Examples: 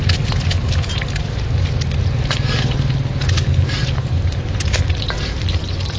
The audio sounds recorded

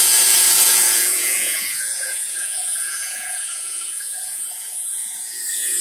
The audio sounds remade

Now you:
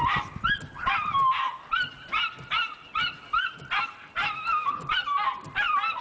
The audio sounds recorded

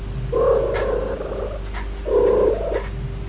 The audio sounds recorded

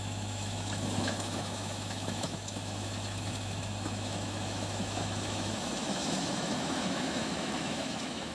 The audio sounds remade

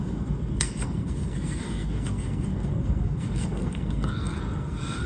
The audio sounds remade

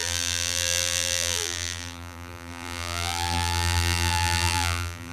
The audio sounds remade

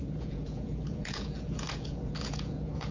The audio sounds remade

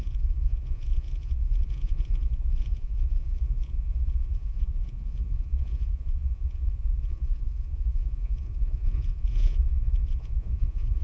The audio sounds remade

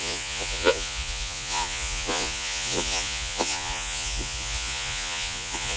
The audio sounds remade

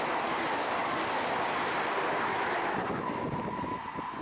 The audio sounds recorded